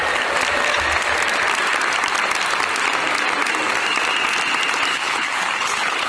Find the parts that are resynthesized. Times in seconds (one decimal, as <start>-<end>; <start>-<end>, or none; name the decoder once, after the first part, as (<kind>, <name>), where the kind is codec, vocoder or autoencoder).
4.9-6.1 (codec, HILCodec)